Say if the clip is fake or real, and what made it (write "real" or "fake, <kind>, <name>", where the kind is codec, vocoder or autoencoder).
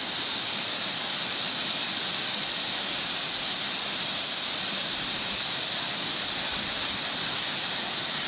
real